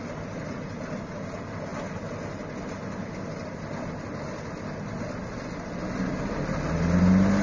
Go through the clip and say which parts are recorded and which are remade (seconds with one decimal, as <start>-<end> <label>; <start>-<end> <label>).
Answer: 0.0-7.4 recorded